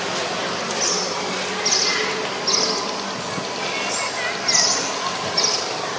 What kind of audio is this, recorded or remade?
recorded